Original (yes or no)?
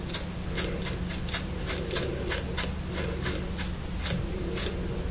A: yes